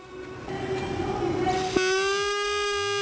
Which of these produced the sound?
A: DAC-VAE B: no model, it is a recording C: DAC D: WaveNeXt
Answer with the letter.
B